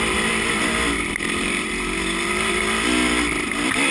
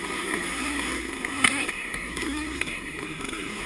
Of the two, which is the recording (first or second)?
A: first